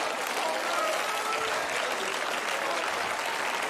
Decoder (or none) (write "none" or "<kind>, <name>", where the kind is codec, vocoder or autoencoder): none